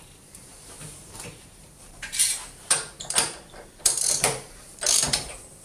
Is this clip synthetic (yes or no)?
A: yes